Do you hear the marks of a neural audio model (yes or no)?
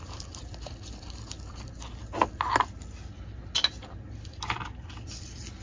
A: no